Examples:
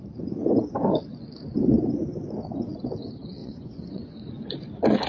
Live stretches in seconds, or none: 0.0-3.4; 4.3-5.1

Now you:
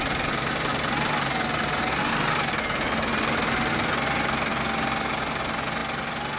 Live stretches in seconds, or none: 0.0-6.4

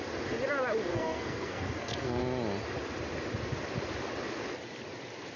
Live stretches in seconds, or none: 0.0-0.9; 2.2-5.4